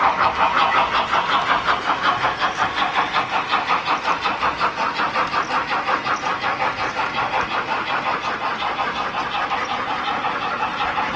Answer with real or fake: real